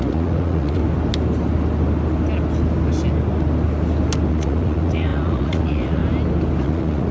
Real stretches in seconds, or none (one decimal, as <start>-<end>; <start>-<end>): 0.8-4.3; 6.0-6.6

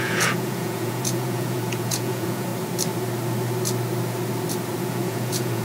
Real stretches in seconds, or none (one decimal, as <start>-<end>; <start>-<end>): 2.5-4.8

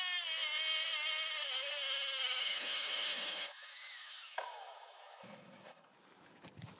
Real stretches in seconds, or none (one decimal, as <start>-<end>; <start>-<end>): 0.0-2.4; 5.9-6.8

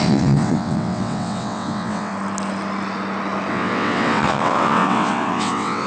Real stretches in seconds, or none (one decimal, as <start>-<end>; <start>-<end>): 2.1-3.5

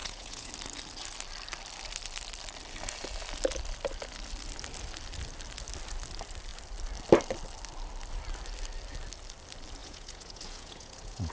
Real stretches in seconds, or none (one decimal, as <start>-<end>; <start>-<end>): 0.5-9.8

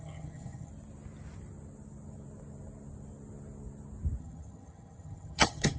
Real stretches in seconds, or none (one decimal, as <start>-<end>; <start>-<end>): 0.7-4.2

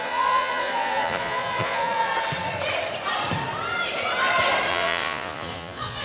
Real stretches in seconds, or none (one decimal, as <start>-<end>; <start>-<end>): 2.1-4.7

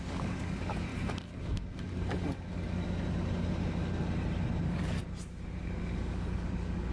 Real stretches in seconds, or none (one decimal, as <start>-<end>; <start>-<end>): 0.9-4.6; 5.0-5.6